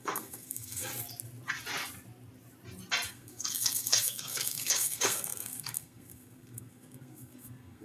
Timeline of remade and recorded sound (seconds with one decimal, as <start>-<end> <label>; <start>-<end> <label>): 0.0-0.9 remade; 0.9-3.1 recorded; 3.1-7.8 remade